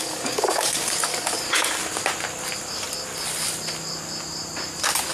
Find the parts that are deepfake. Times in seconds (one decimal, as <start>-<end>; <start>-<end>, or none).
0.0-1.8